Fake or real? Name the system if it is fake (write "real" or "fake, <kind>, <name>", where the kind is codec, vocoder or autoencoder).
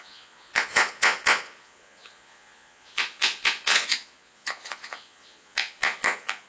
fake, vocoder, Vocos